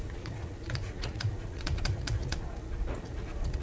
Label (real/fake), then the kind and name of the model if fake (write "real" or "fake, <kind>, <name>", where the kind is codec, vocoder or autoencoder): fake, vocoder, Vocos